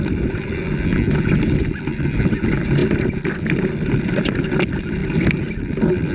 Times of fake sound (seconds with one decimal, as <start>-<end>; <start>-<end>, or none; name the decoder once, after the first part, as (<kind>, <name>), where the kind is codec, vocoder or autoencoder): none